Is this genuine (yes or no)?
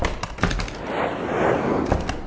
yes